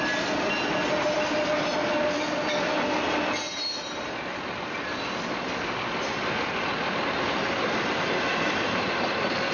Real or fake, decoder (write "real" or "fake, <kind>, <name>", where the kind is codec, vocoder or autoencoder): real